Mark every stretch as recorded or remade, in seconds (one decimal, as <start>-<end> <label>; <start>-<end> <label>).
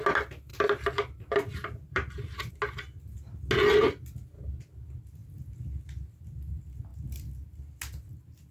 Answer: 0.0-0.5 recorded; 0.5-2.5 remade; 2.5-8.5 recorded